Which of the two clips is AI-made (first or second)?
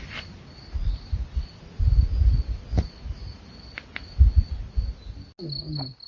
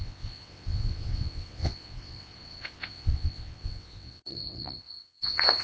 second